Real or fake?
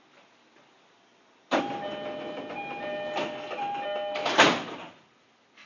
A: real